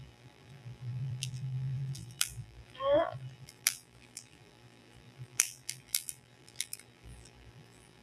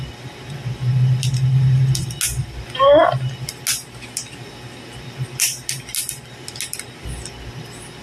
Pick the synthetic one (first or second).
first